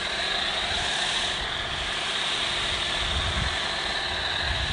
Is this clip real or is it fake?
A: real